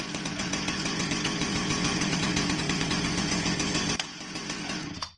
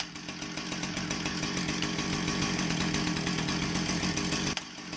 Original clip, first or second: second